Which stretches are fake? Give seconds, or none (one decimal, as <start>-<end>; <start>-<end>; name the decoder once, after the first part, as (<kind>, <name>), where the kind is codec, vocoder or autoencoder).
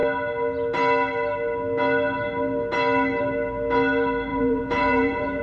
4.3-5.4 (vocoder, Vocos)